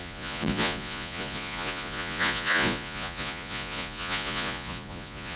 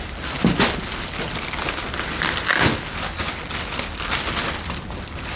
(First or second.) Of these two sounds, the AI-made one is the first